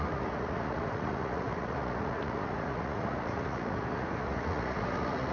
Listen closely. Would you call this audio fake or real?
fake